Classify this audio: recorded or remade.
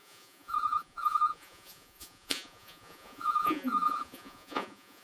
remade